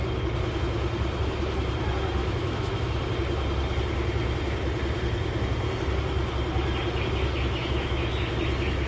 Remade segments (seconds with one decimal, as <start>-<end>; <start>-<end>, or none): 2.2-2.9; 7.6-8.3